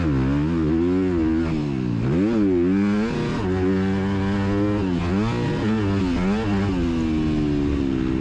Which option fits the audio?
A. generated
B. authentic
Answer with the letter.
B